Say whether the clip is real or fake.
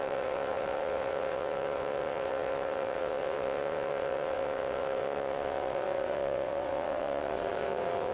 fake